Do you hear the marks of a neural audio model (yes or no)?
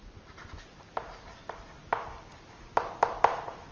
no